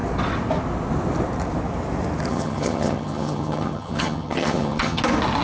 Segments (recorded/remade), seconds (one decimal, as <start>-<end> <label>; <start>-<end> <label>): 0.0-2.3 recorded; 2.3-5.0 remade; 5.0-5.4 recorded

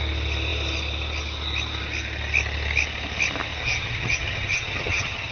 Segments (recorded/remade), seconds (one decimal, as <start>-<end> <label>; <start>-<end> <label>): 0.0-3.6 recorded; 3.6-5.3 remade

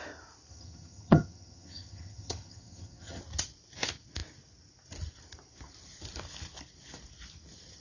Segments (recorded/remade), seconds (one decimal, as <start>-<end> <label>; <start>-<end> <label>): 0.0-0.5 recorded; 0.5-3.2 remade; 3.2-7.8 recorded